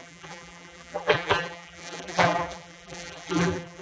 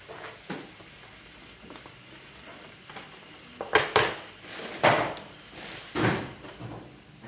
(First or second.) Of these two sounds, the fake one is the first